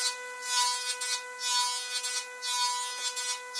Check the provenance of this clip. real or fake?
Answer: real